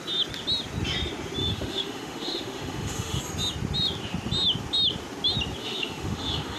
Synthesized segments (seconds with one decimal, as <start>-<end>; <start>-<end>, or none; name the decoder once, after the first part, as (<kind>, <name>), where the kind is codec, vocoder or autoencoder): 1.4-3.2 (autoencoder, DAC-VAE); 5.6-6.6